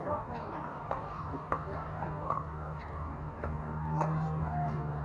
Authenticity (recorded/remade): remade